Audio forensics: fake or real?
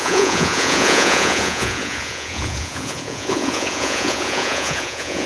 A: fake